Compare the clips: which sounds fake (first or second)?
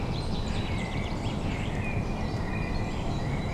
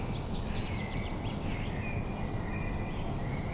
first